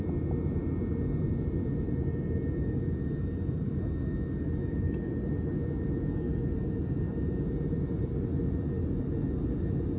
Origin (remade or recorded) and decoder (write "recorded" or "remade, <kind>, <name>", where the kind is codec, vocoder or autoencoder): recorded